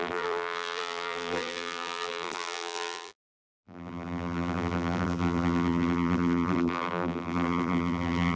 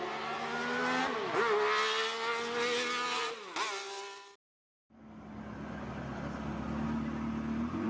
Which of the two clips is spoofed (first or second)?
first